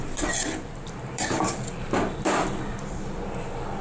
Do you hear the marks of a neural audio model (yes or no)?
yes